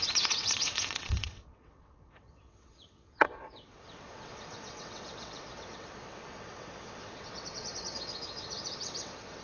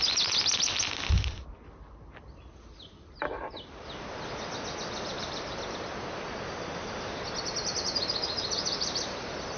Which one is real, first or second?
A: second